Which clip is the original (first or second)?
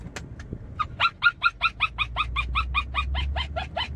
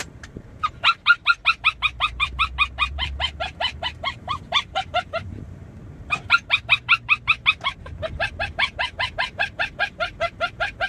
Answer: first